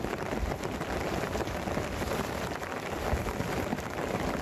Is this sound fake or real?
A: real